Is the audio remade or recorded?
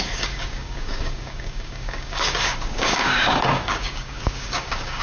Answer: remade